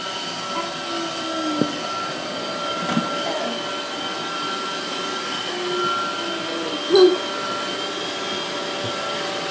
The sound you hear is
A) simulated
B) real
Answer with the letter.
B